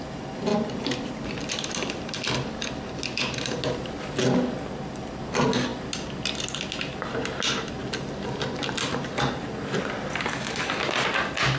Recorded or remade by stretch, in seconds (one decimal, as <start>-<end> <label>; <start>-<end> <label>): 0.0-11.6 recorded